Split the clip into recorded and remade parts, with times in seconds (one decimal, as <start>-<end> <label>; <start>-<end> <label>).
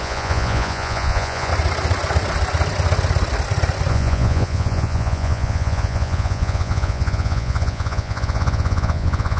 0.0-1.5 remade; 1.5-3.9 recorded; 3.9-9.4 remade